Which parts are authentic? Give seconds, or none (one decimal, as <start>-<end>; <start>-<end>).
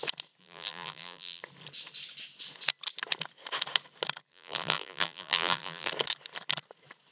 0.0-0.4; 1.4-4.3; 5.9-7.1